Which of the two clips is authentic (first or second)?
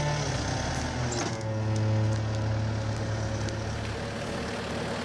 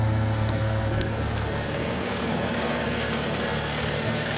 first